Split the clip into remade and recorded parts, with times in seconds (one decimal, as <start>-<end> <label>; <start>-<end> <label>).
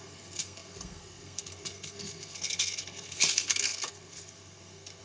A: 0.0-5.0 remade